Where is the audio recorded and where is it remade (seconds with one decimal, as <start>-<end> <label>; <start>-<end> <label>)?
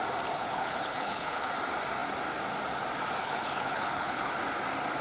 0.0-0.4 recorded; 0.4-1.5 remade; 1.5-3.2 recorded; 3.2-4.3 remade; 4.3-5.0 recorded